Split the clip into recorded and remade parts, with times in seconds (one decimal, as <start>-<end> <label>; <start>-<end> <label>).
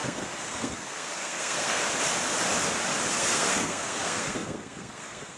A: 0.0-1.8 remade; 1.8-3.1 recorded; 3.1-5.4 remade